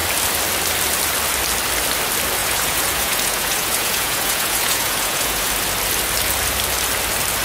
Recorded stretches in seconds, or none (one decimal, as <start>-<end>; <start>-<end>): 0.0-2.4; 5.5-7.4